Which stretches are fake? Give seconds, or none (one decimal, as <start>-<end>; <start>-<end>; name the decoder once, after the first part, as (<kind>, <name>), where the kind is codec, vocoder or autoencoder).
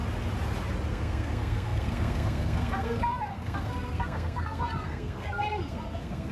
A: 0.9-6.3 (codec, SNAC)